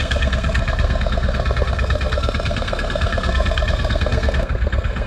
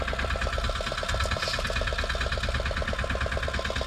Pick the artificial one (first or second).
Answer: first